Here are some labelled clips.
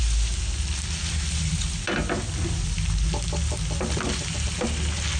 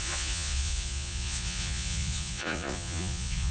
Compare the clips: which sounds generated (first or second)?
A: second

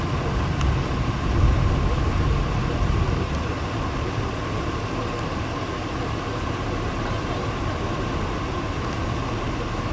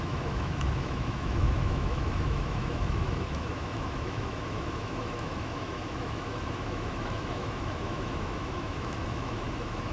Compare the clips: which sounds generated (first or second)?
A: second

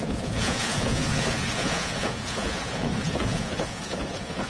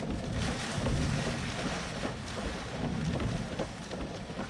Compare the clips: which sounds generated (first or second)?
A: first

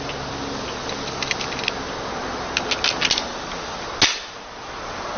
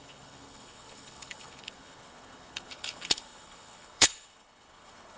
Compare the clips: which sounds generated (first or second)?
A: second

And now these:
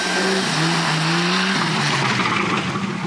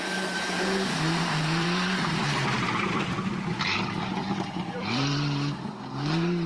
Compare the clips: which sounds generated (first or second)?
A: second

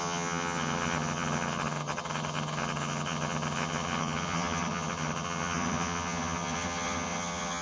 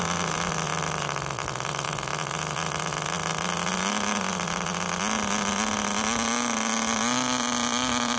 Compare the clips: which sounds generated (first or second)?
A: first